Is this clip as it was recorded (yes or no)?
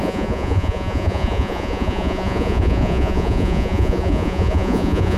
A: no